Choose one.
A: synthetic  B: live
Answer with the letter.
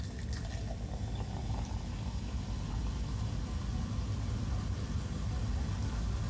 B